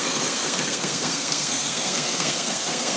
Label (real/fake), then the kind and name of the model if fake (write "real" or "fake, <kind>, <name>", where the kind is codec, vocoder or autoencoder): fake, codec, SNAC